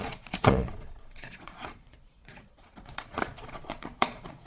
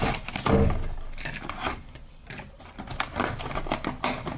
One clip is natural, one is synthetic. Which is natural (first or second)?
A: second